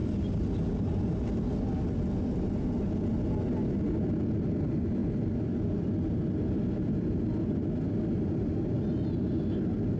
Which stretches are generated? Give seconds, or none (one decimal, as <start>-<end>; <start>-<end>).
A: none

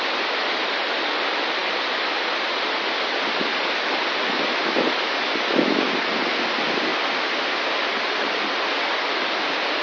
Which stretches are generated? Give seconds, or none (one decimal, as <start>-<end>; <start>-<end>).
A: none

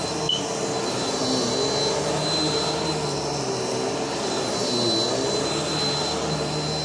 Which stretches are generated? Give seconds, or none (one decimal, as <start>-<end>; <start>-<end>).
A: none

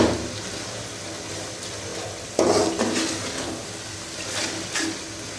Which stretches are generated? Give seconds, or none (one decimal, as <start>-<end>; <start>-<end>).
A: 1.9-4.7

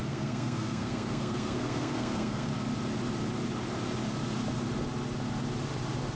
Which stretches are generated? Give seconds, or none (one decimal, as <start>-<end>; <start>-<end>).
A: 0.0-2.5